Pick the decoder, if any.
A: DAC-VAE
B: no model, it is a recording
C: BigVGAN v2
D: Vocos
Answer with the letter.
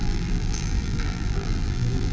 C